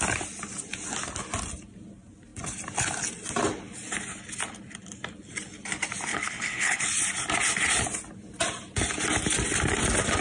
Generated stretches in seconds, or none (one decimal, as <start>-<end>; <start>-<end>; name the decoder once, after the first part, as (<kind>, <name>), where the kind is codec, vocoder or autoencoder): 6.1-6.8 (codec, HILCodec)

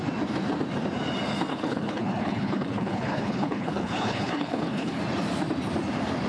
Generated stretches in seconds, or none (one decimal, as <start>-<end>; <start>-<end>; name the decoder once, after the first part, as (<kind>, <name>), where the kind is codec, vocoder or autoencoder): 1.5-5.0 (codec, HILCodec)

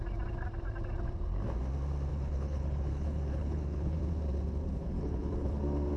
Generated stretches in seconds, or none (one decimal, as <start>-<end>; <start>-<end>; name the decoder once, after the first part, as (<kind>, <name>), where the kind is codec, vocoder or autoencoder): 2.1-4.0 (codec, HILCodec); 4.7-5.6

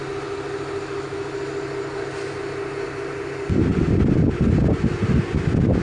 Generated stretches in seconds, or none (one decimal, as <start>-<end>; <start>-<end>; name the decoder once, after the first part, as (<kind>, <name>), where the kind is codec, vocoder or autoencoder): none